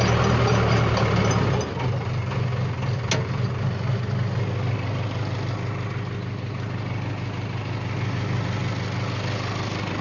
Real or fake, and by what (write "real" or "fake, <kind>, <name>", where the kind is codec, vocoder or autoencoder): real